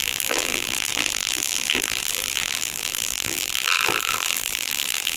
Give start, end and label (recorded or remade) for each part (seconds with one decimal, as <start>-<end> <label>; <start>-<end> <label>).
0.0-5.2 remade